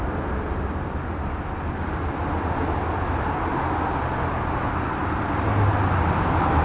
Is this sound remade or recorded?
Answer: recorded